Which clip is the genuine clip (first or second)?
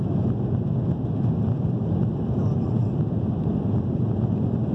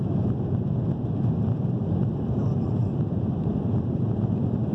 first